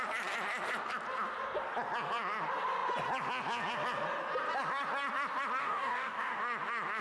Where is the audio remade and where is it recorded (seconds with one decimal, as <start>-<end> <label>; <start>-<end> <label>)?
0.0-5.6 recorded; 5.6-6.4 remade; 6.4-7.0 recorded